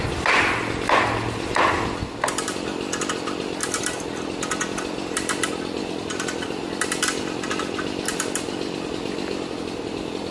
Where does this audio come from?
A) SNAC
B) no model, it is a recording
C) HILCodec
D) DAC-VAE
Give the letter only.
B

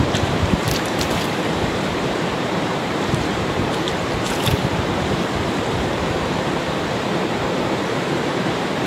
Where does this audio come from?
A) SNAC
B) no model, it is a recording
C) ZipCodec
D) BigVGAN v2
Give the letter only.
D